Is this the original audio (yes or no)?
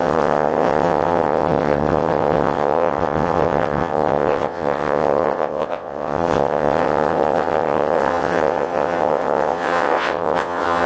no